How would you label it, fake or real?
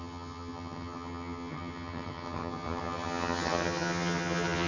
fake